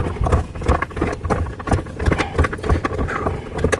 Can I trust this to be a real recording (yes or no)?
yes